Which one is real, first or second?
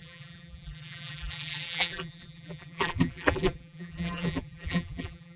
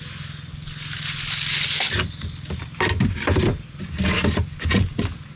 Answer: second